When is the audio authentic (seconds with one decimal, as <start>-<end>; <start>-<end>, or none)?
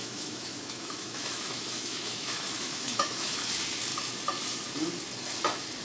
3.5-5.8